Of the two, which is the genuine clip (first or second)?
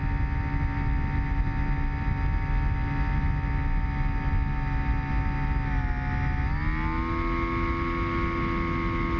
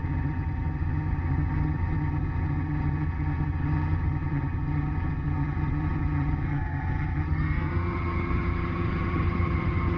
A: first